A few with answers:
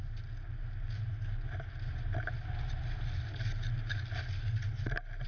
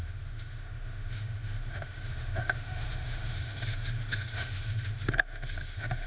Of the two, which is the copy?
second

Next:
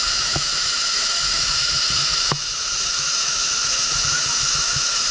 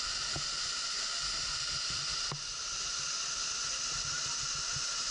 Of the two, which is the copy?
first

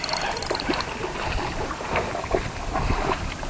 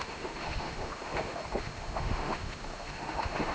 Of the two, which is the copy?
second